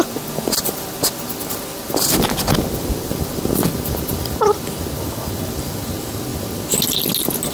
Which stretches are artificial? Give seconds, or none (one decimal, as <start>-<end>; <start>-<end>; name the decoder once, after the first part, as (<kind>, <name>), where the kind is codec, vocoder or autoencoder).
none